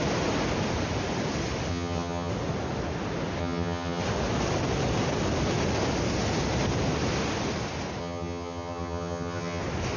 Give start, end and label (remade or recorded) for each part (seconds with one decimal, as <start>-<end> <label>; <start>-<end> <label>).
0.0-1.7 recorded; 1.7-2.3 remade; 2.3-3.4 recorded; 3.4-4.0 remade; 4.0-8.0 recorded; 8.0-9.6 remade; 9.6-10.0 recorded